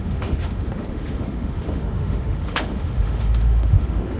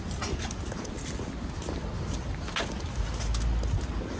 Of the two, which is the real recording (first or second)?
second